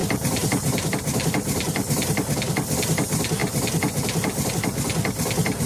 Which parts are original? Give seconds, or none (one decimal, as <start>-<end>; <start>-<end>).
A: 2.2-5.7